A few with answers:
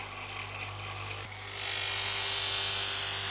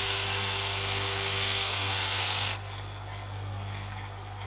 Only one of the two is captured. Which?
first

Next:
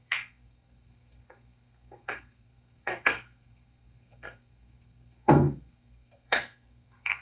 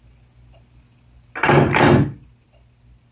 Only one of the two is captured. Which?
second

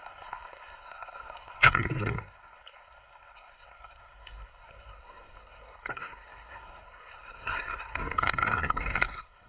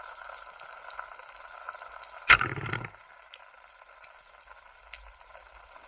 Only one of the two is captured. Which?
second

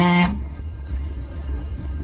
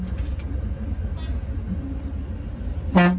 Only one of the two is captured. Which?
second